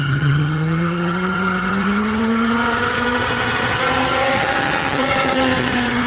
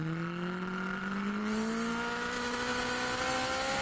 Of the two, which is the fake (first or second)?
first